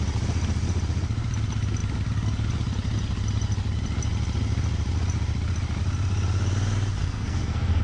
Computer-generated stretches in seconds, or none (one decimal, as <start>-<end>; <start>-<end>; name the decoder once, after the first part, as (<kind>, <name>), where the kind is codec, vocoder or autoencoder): 7.0-7.8 (codec, SNAC)